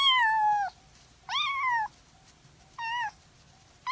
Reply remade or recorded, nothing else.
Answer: recorded